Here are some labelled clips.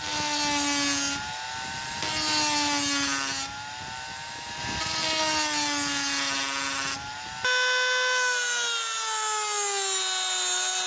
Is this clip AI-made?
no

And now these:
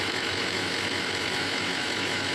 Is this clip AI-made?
yes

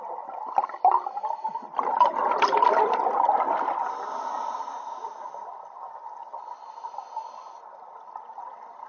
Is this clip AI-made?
no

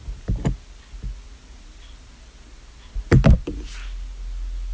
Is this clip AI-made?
no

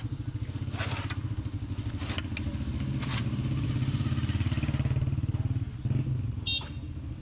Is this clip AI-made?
no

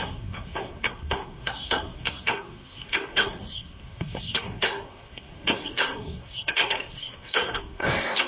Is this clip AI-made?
yes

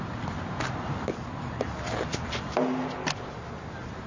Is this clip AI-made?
no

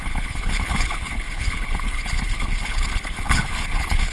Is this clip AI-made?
yes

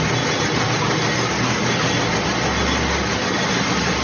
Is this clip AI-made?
no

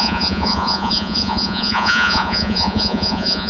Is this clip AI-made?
yes